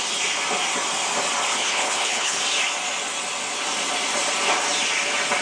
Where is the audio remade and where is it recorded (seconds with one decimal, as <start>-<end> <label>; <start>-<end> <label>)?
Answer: 0.0-1.5 recorded; 1.5-2.4 remade; 2.4-5.4 recorded

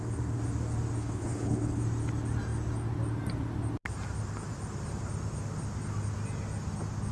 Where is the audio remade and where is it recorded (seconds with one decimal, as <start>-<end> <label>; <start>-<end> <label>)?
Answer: 0.0-1.0 recorded; 1.0-1.8 remade; 1.8-7.1 recorded

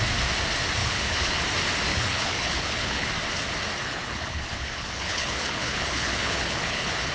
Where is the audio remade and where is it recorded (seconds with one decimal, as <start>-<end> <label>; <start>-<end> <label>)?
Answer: 0.0-0.8 recorded; 0.8-1.4 remade; 1.4-1.9 recorded; 1.9-3.1 remade; 3.1-3.8 recorded; 3.8-7.1 remade